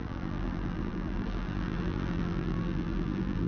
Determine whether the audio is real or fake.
fake